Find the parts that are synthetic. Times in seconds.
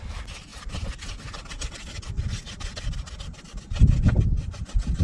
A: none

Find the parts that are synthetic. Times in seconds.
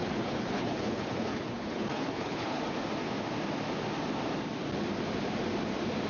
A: 0.0-2.6 (codec, HILCodec)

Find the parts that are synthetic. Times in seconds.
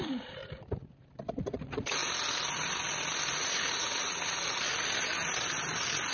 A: 0.0-0.4 (vocoder, Vocos); 1.4-2.0; 3.3-4.7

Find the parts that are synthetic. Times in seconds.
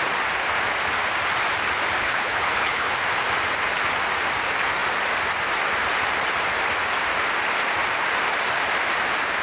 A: 2.0-2.9 (codec, HILCodec)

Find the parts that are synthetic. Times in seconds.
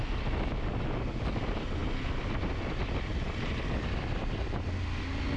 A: none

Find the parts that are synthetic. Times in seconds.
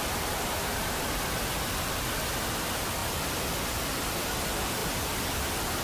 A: none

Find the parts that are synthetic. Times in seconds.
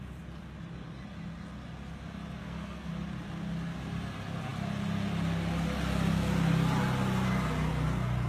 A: 2.4-2.9 (codec, SNAC)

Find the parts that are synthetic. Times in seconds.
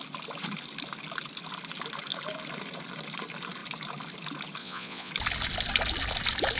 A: 4.6-5.1 (vocoder, Vocos)